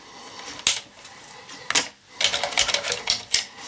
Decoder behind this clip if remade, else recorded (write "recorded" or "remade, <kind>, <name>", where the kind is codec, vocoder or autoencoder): recorded